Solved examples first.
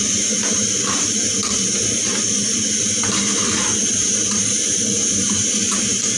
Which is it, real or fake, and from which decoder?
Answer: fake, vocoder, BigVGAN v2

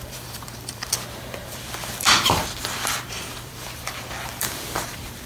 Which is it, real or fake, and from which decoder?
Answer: fake, vocoder, BigVGAN v2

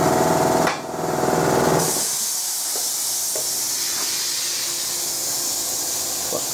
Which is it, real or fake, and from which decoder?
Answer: real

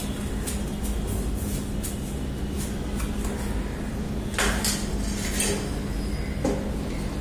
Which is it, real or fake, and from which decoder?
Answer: real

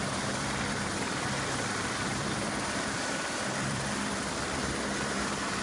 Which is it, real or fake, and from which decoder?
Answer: fake, vocoder, BigVGAN v2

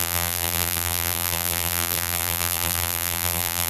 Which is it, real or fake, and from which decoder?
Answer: fake, vocoder, BigVGAN v2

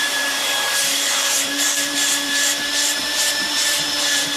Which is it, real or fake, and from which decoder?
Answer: fake, vocoder, BigVGAN v2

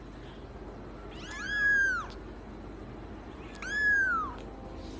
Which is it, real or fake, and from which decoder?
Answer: real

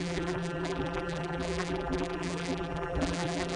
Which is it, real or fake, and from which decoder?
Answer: fake, vocoder, BigVGAN v2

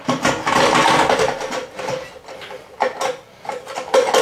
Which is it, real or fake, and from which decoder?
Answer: real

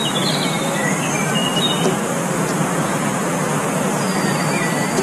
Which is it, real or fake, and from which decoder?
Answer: fake, vocoder, BigVGAN v2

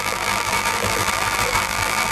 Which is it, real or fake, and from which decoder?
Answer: fake, vocoder, BigVGAN v2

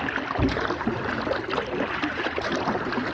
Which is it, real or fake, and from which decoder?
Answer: real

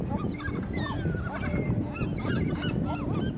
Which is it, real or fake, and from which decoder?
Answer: fake, vocoder, BigVGAN v2